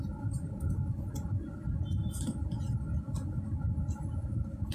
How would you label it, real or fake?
real